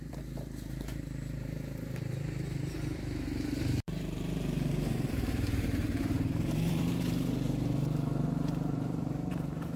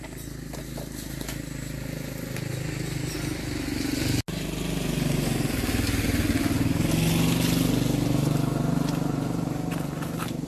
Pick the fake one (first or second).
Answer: first